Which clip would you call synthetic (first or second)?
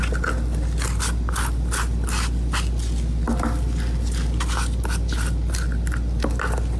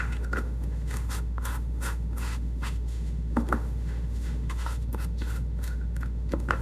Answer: second